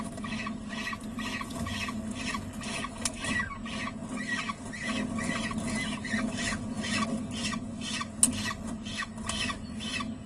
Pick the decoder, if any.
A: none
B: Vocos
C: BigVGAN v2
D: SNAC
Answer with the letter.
A